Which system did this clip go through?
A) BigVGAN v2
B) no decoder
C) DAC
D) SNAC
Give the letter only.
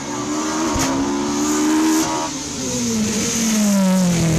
B